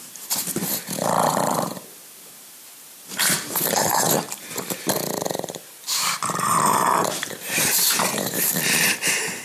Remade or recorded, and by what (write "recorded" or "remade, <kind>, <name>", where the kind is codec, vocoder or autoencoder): remade, vocoder, BigVGAN v2